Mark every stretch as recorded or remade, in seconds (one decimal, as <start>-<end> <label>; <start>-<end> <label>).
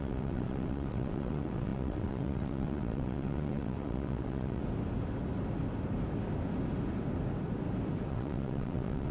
0.0-4.6 remade; 4.6-8.1 recorded; 8.1-9.1 remade